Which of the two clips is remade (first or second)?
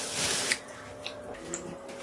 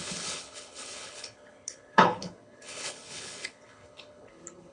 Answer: second